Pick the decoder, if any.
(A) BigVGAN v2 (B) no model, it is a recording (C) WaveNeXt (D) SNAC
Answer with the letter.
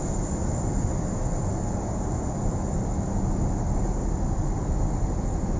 B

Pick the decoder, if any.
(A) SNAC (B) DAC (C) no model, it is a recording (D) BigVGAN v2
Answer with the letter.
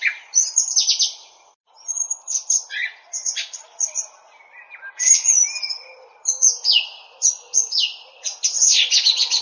C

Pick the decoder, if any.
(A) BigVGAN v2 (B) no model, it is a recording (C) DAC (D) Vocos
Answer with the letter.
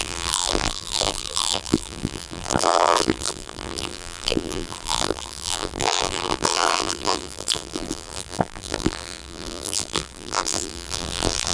A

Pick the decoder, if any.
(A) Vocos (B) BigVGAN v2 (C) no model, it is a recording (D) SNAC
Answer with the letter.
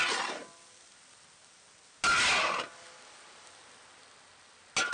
C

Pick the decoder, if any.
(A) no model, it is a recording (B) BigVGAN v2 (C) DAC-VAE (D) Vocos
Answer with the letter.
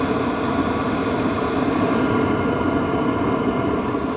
B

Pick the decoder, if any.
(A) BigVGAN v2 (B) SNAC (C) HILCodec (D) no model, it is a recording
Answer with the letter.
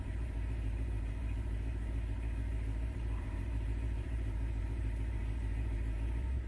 A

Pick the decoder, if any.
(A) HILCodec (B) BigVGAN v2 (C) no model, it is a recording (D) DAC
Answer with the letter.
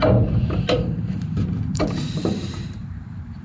B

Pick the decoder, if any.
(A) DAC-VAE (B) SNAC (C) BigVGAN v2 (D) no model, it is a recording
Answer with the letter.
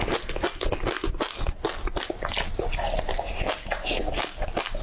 D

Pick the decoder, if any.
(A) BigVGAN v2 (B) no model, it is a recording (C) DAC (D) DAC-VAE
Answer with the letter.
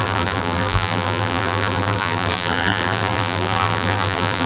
A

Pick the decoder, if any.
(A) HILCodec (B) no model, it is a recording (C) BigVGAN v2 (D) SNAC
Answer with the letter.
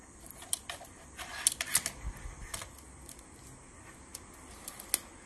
B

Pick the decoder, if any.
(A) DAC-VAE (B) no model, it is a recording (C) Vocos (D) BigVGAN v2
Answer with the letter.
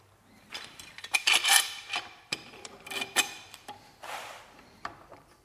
D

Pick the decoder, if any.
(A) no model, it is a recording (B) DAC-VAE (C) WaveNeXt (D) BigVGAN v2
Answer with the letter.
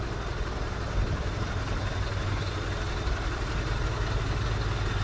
A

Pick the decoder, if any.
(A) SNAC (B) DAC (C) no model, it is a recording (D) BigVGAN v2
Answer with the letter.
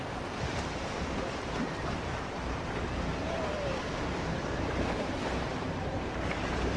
D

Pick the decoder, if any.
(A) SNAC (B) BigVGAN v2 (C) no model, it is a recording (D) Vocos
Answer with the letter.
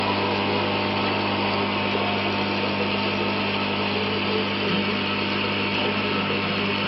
C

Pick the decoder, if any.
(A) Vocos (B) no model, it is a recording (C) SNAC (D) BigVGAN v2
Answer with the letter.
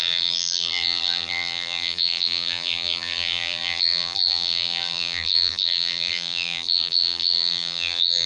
D